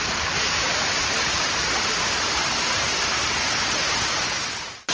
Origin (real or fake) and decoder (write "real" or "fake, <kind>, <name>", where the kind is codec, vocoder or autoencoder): real